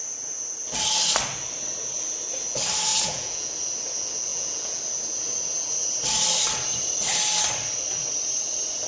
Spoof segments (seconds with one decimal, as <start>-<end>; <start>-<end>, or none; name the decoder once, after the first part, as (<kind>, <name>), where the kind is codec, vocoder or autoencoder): 2.9-3.5 (vocoder, Vocos); 4.3-4.8